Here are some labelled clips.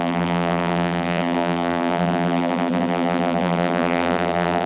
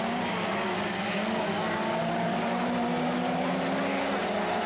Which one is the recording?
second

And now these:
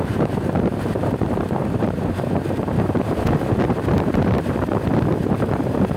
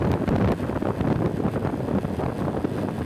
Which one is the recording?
second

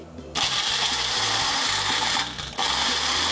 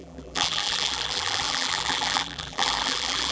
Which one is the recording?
first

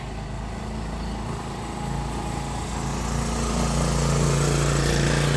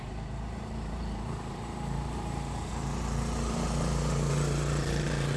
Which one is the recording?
first